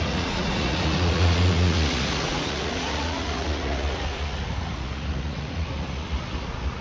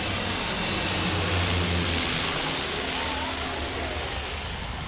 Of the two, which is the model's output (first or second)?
first